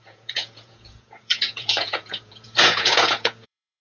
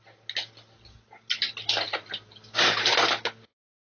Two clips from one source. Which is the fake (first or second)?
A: first